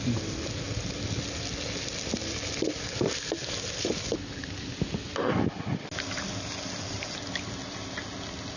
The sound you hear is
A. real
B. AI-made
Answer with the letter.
A